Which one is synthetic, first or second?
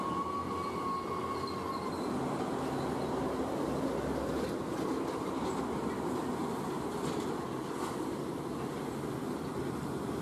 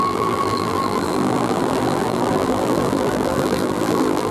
second